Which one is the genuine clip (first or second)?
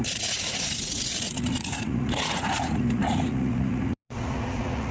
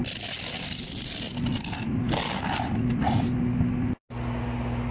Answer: second